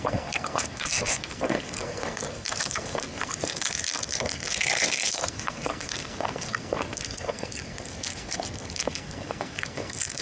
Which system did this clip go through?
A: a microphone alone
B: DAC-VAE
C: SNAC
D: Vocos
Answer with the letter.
C